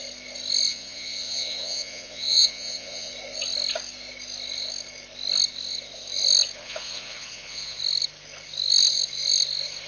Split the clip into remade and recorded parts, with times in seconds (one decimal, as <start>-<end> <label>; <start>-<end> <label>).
0.0-0.7 recorded; 0.7-3.1 remade; 3.1-6.6 recorded; 6.6-7.8 remade; 7.8-9.9 recorded